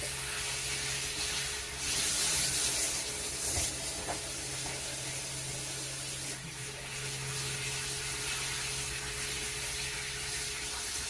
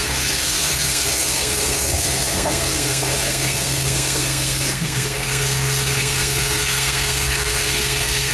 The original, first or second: first